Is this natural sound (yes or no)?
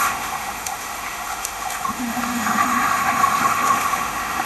no